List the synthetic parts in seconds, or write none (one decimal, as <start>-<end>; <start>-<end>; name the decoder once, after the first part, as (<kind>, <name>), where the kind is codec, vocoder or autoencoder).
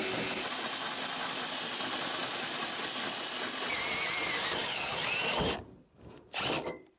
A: 2.2-2.8 (vocoder, BigVGAN v2)